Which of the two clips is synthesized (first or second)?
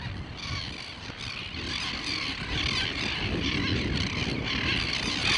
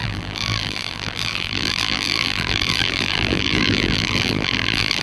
second